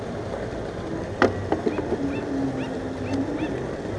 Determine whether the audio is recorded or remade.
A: recorded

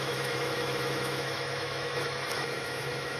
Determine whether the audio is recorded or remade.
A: remade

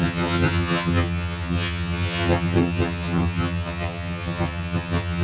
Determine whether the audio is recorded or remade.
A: remade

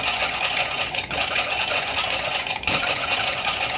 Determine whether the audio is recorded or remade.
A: remade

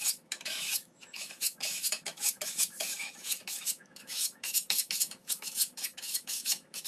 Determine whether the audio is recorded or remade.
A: remade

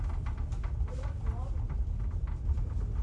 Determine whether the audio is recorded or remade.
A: recorded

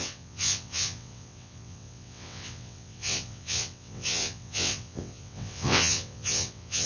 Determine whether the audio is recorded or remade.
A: remade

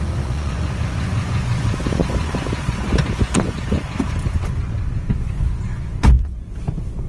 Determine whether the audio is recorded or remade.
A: remade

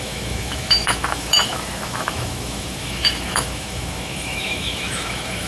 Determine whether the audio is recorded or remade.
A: remade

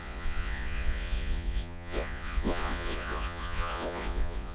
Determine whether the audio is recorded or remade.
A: remade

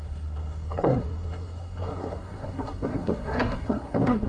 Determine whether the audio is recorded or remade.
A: remade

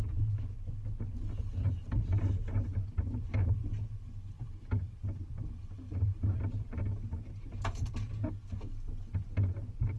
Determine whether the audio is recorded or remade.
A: recorded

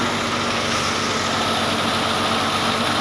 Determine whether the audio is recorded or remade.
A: recorded